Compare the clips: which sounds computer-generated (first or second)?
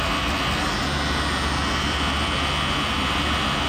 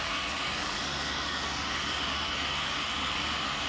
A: second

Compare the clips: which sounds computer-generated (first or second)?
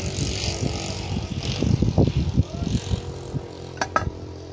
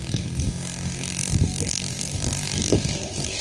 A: second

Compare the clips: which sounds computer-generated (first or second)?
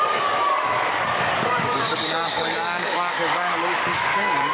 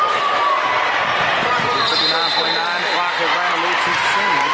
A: first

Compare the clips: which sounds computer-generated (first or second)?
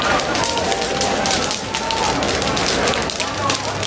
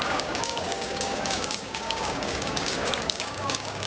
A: second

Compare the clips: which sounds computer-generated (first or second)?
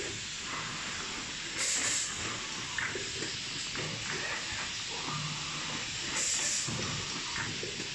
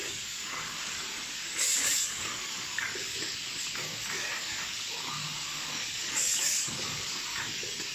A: second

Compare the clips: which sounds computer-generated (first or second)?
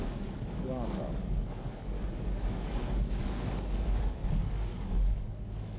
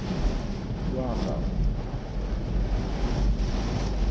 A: first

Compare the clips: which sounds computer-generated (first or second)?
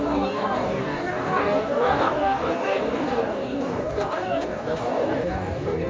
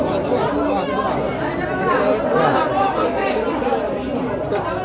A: first